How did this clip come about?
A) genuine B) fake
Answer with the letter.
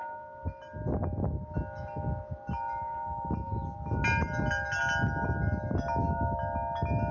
A